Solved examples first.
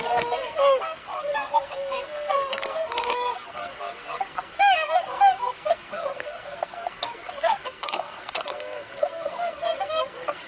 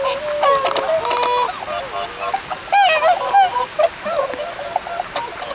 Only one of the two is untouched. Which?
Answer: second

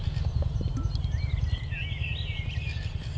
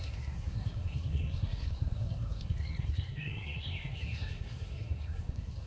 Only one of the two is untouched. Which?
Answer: first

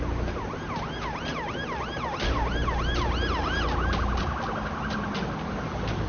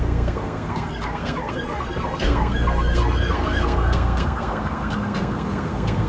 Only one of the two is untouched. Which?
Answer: first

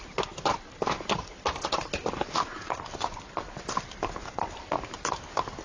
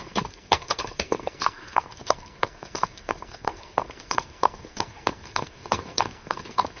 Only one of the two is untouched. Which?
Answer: first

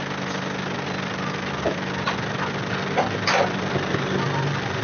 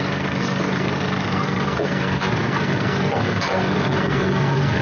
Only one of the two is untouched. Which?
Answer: first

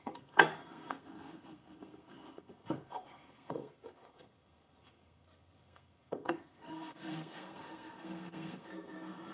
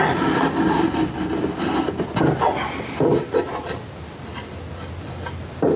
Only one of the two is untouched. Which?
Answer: second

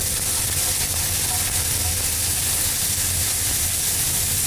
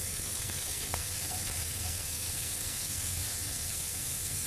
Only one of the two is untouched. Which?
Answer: first